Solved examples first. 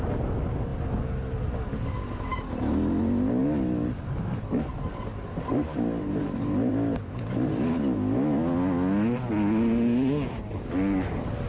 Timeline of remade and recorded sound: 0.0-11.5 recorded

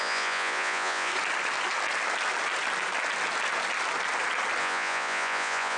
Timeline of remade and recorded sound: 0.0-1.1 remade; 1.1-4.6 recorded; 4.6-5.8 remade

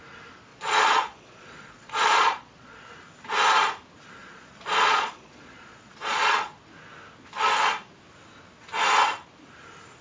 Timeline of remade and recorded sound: 0.0-0.5 recorded; 0.5-2.9 remade; 2.9-4.2 recorded; 4.2-6.6 remade; 6.6-10.0 recorded

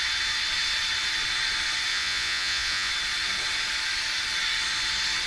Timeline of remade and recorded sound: 0.0-1.9 recorded; 1.9-2.9 remade; 2.9-5.3 recorded

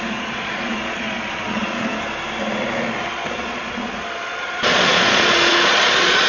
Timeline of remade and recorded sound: 0.0-1.9 remade; 1.9-3.1 recorded; 3.1-6.3 remade